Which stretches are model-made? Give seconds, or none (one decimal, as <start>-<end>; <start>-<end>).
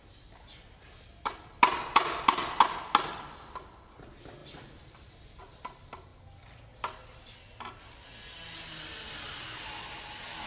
4.4-5.4